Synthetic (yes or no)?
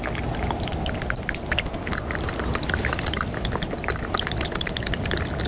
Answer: no